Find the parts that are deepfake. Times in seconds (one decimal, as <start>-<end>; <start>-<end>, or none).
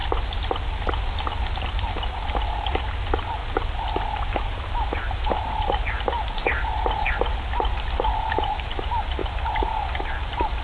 none